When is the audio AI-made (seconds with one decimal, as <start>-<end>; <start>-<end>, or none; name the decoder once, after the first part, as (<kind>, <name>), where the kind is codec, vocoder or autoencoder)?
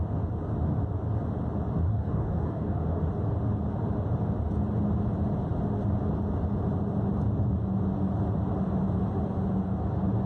1.9-3.0 (codec, DAC)